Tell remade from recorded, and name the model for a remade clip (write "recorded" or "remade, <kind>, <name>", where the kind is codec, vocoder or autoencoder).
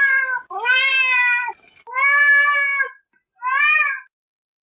recorded